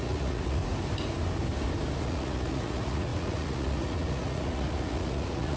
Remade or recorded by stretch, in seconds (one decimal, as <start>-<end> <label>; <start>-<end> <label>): 0.0-0.6 remade; 0.6-2.0 recorded; 2.0-5.6 remade